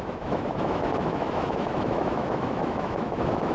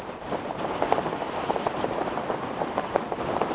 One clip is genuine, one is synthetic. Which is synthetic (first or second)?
first